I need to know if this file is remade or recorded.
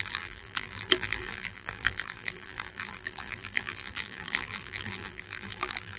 remade